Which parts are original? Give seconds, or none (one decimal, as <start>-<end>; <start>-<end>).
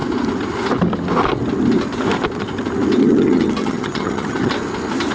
0.0-3.0; 4.5-5.1